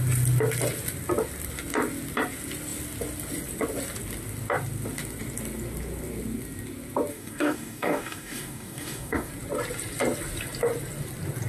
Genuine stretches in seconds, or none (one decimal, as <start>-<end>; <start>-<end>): 0.0-7.1; 9.3-11.5